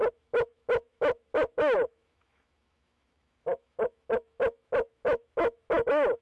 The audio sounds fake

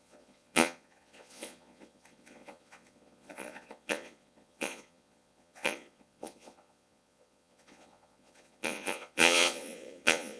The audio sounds fake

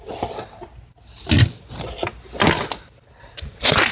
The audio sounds real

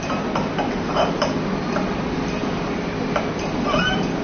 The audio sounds real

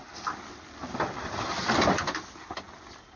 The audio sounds real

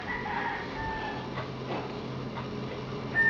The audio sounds real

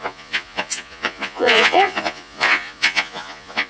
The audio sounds fake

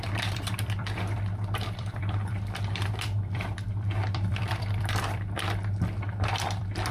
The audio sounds fake